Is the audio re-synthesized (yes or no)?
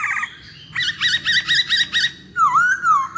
no